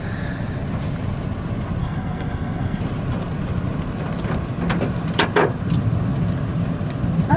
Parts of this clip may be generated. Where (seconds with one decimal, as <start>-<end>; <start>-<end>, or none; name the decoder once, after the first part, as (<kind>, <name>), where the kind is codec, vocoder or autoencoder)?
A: 1.8-2.8 (codec, SNAC)